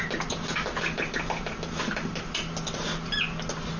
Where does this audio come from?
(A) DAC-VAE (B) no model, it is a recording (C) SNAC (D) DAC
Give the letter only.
B